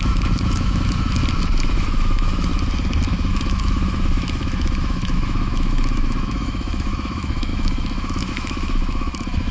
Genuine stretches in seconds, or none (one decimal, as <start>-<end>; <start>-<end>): 1.2-1.7; 2.5-3.3